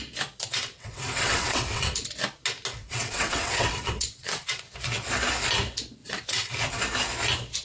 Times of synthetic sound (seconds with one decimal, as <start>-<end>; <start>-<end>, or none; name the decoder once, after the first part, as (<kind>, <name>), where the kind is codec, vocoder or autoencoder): 0.5-1.9 (vocoder, WaveNeXt); 2.8-4.6; 6.0-6.5